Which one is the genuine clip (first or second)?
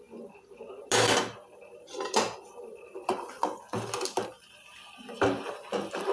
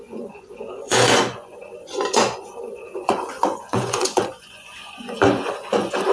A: first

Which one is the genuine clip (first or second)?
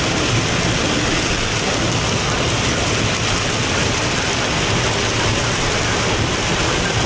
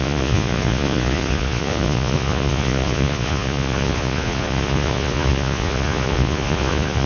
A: first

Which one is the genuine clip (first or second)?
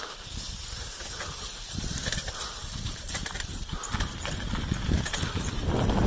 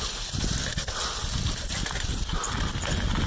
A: second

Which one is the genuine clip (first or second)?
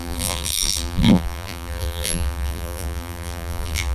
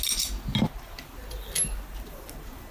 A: second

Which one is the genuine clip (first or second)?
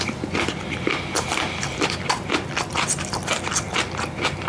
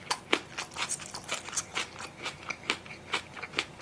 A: second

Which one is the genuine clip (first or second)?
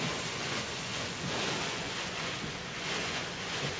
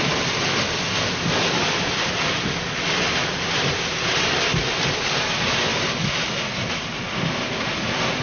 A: second